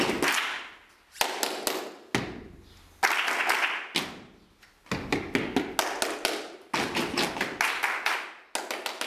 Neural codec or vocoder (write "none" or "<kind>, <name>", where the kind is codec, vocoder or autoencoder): none